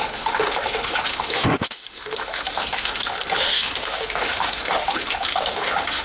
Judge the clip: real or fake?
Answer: fake